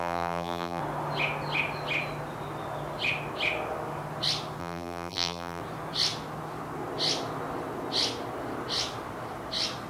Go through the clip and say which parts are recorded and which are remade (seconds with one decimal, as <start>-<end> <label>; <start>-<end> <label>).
0.0-0.8 remade; 0.8-4.6 recorded; 4.6-5.6 remade; 5.6-9.9 recorded

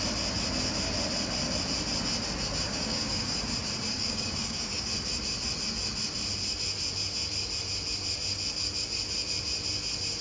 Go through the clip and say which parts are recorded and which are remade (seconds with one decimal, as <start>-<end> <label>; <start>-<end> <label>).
0.0-2.7 recorded; 2.7-3.4 remade; 3.4-3.9 recorded; 3.9-4.9 remade; 4.9-10.2 recorded